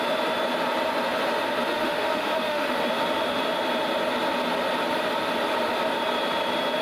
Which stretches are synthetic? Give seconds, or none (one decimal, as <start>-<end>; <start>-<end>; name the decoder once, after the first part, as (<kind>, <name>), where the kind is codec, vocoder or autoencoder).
1.7-2.9 (autoencoder, DAC-VAE)